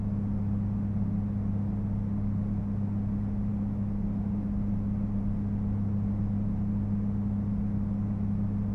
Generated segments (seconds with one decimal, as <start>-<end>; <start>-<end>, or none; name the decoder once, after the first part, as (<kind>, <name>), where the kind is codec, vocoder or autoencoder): none